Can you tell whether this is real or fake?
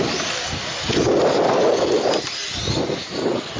real